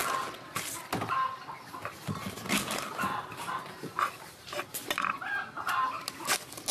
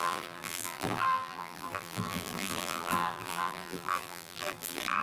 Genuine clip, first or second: first